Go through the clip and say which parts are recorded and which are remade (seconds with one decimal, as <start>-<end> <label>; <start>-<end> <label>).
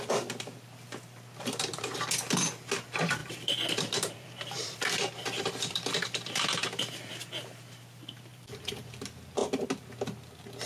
0.0-1.7 recorded; 1.7-2.5 remade; 2.5-3.2 recorded; 3.2-7.1 remade; 7.1-8.3 recorded; 8.3-8.9 remade; 8.9-10.7 recorded